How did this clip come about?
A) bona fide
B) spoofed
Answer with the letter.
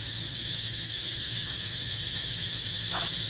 B